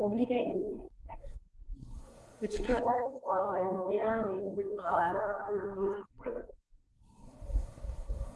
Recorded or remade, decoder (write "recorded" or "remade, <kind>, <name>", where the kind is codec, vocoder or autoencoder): remade, codec, SNAC